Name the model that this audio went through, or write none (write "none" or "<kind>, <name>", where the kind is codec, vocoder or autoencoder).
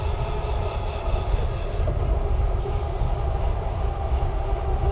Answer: none